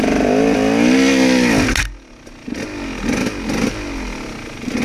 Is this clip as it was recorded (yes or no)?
yes